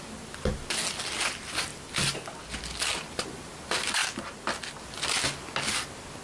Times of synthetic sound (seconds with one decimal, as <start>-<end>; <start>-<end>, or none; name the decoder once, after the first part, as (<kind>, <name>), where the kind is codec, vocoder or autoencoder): none